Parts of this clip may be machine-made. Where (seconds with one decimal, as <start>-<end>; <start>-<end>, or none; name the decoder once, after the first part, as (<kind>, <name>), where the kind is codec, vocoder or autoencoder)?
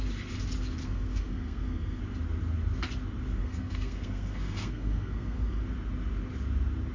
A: 0.8-2.0 (codec, SNAC); 3.4-5.6